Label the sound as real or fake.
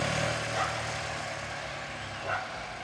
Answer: real